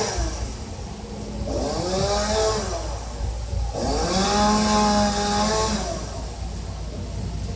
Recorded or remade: recorded